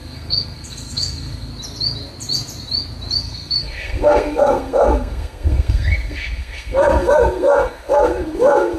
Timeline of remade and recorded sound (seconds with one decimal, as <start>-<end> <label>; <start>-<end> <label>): 0.0-1.5 remade; 1.5-3.2 recorded; 3.2-8.8 remade